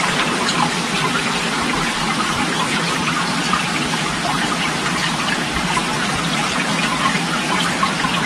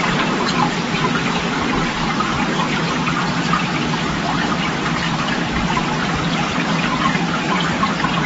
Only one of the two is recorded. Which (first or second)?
second